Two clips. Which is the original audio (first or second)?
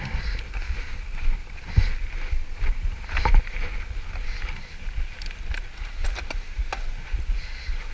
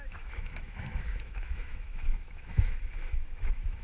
first